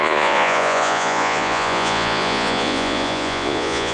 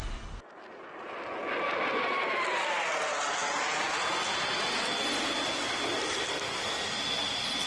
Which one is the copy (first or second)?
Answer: first